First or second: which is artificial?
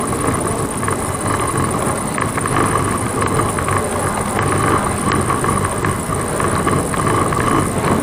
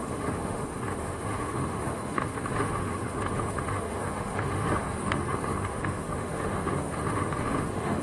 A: second